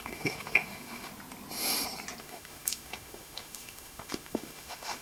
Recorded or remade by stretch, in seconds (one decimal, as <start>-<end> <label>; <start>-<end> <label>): 0.0-1.1 remade; 1.1-2.2 recorded; 2.2-5.0 remade